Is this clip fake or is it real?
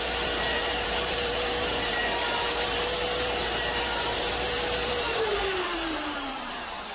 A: fake